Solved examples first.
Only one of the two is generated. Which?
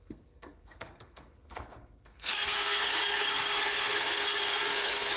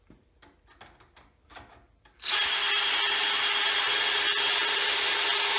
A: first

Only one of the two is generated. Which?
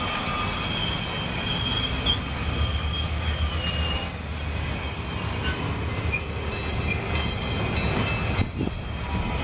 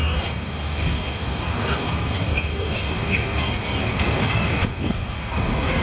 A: second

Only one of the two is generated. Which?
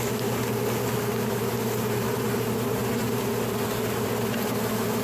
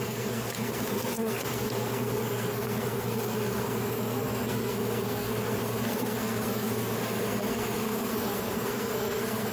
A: second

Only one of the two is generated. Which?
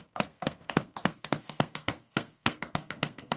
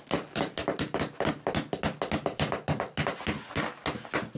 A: first